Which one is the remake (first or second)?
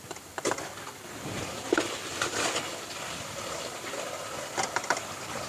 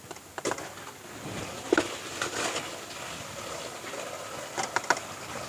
first